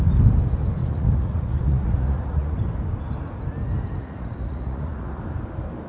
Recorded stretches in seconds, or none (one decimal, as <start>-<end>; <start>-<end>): 0.0-0.8; 2.6-4.0; 5.2-5.9

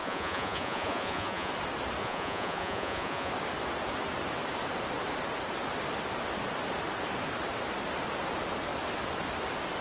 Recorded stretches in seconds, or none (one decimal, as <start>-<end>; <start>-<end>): 1.5-2.0; 3.3-9.8

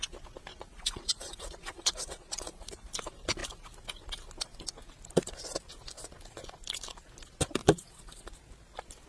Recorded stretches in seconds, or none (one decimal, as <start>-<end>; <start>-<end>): 0.0-0.5; 2.9-7.6; 8.3-9.1

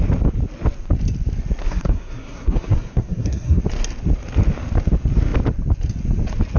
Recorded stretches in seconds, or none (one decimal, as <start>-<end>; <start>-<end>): 0.0-1.6; 3.6-6.6

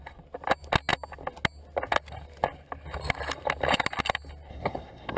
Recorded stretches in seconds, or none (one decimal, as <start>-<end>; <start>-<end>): 0.0-4.5

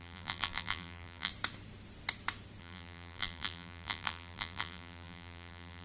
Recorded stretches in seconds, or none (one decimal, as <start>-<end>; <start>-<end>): 1.3-2.6

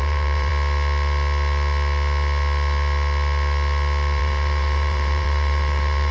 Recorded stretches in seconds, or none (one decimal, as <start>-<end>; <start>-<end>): 0.5-4.2

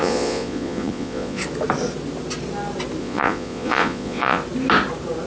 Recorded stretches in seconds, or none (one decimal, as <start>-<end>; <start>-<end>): 1.4-3.0; 4.4-5.3